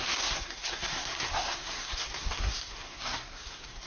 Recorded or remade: remade